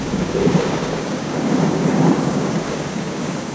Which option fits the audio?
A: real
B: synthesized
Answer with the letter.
B